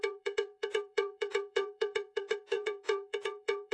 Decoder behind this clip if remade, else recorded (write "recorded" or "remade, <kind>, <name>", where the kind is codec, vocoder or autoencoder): remade, vocoder, Vocos